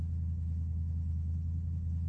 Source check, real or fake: real